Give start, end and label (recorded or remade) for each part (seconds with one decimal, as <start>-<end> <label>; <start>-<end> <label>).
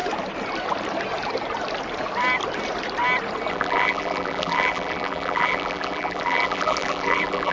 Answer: 0.0-3.5 recorded; 3.5-7.5 remade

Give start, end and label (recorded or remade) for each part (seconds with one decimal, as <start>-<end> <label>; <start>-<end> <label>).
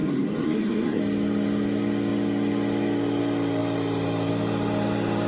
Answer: 0.0-1.0 remade; 1.0-5.3 recorded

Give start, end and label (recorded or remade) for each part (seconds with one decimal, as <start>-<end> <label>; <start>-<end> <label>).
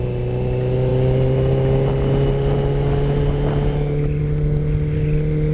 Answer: 0.0-5.5 recorded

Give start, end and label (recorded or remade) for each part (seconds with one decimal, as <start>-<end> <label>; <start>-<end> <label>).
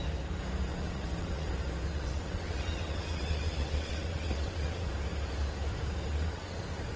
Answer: 0.0-0.7 recorded; 0.7-1.5 remade; 1.5-1.9 recorded; 1.9-4.9 remade; 4.9-6.1 recorded; 6.1-6.6 remade; 6.6-7.0 recorded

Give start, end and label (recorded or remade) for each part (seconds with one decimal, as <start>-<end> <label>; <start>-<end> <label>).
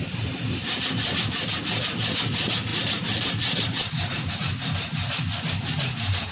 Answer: 0.0-6.3 recorded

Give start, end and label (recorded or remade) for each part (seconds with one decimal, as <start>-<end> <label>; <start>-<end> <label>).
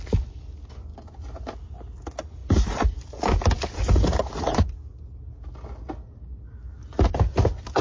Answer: 0.0-7.8 recorded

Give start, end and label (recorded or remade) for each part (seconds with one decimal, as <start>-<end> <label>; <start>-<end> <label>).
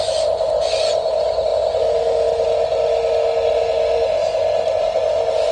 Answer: 0.0-5.5 recorded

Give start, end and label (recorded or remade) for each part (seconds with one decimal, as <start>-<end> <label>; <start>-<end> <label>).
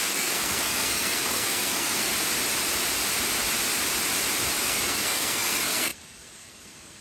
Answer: 0.0-2.1 remade; 2.1-4.6 recorded; 4.6-7.0 remade